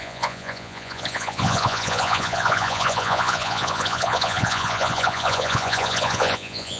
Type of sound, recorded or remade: remade